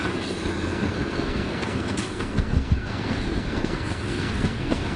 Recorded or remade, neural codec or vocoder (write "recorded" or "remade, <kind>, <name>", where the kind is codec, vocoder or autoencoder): remade, codec, SNAC